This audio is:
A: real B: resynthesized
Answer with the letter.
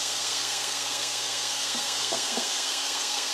B